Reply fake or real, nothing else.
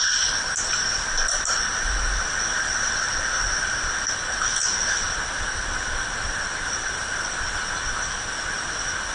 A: real